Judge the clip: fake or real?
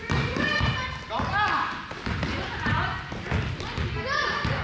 real